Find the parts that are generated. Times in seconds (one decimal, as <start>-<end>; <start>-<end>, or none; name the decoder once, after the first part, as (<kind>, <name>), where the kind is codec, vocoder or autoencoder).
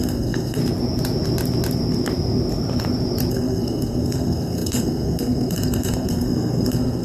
0.0-0.6 (codec, SNAC); 3.3-7.0